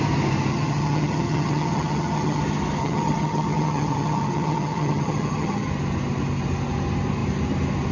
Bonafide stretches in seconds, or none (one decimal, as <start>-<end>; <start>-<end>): 0.0-0.5; 2.4-2.8; 5.7-7.9